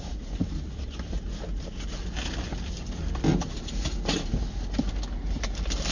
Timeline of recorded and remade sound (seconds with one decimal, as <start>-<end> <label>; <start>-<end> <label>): 0.0-5.9 recorded